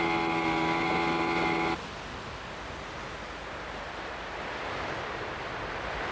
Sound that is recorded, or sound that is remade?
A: recorded